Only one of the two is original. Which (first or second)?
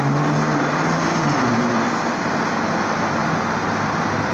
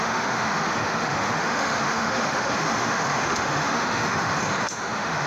first